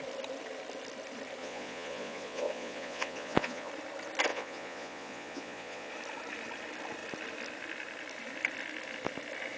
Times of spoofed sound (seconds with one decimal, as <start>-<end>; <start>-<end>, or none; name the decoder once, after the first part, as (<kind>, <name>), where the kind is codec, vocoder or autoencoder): 1.4-3.7 (vocoder, Vocos); 4.3-5.9